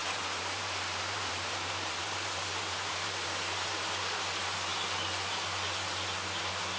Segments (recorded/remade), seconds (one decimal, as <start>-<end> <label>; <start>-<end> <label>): 0.0-3.7 remade; 3.7-6.8 recorded